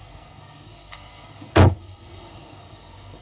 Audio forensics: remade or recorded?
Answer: remade